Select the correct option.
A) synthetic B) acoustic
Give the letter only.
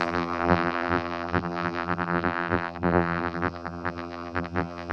A